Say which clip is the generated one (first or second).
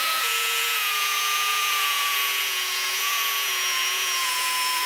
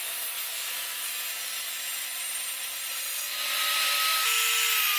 first